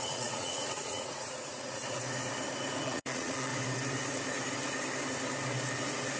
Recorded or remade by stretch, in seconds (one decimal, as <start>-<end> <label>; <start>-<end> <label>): 0.0-1.8 remade; 1.8-2.8 recorded; 2.8-3.5 remade; 3.5-6.2 recorded

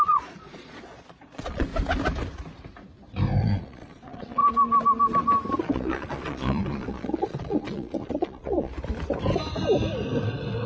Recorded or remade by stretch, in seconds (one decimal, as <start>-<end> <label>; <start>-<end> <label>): 0.0-1.7 remade; 1.7-3.4 recorded; 3.4-4.4 remade; 4.4-5.6 recorded; 5.6-8.7 remade; 8.7-10.7 recorded

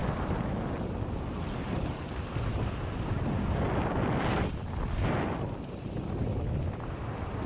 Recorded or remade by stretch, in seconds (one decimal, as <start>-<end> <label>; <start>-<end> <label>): 0.0-7.5 recorded

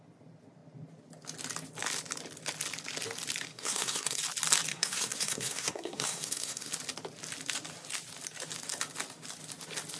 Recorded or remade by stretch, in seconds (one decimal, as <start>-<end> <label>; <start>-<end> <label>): 0.0-3.5 recorded; 3.5-4.2 remade; 4.2-4.7 recorded; 4.7-6.7 remade; 6.7-10.0 recorded